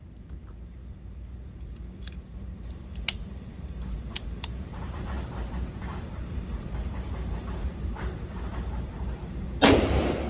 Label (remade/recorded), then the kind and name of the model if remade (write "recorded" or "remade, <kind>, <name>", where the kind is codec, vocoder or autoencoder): remade, vocoder, BigVGAN v2